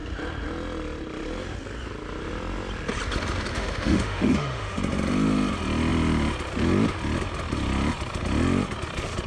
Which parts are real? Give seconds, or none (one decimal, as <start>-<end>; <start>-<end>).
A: 0.0-3.5; 4.8-9.3